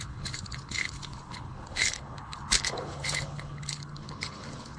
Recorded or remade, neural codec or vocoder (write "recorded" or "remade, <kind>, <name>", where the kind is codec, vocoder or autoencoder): remade, codec, HILCodec